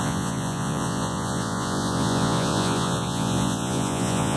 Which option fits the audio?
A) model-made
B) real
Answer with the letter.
A